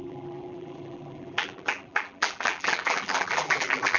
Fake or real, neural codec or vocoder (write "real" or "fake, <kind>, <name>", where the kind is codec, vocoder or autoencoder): fake, vocoder, BigVGAN v2